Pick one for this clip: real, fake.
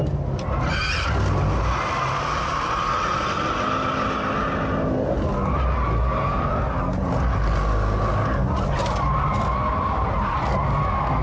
real